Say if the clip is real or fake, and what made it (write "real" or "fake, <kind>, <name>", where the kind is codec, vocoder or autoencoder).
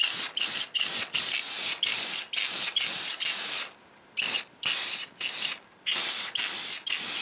real